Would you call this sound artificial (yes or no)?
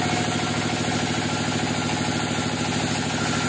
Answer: no